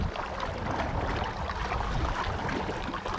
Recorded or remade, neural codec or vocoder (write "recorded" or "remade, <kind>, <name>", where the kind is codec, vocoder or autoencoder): recorded